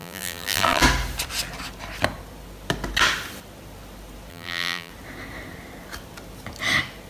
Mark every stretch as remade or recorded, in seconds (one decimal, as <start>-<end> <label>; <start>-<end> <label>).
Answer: 0.0-0.8 remade; 0.8-4.3 recorded; 4.3-4.9 remade; 4.9-7.1 recorded